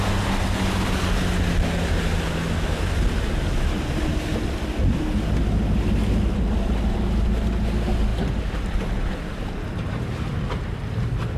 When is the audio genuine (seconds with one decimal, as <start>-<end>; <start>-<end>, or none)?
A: 0.0-11.4